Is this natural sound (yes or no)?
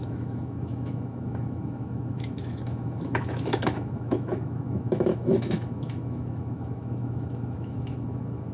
no